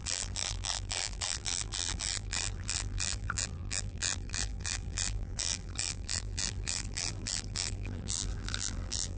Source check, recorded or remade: remade